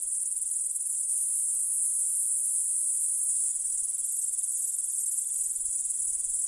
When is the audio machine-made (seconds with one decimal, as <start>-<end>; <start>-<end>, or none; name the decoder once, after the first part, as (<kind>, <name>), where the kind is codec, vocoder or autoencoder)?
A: 1.1-3.5 (vocoder, Vocos)